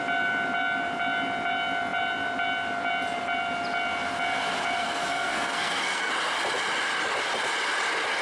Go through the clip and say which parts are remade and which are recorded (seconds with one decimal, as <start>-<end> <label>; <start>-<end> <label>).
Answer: 0.0-4.8 recorded; 4.8-6.1 remade; 6.1-8.2 recorded